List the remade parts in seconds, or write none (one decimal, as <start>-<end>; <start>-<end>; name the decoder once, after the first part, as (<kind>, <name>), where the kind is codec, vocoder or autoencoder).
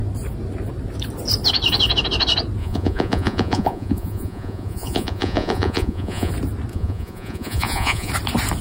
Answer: 2.6-6.3 (vocoder, Vocos); 6.7-8.1